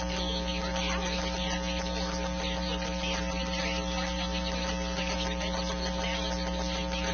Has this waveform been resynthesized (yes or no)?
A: no